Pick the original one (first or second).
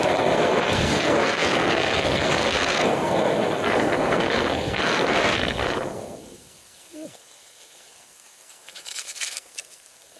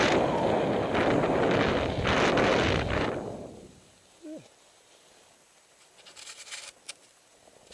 second